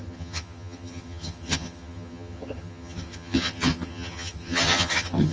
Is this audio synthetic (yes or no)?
yes